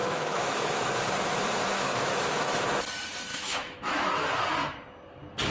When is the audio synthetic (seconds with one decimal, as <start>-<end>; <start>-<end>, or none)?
0.0-0.9; 1.7-2.5; 3.3-4.1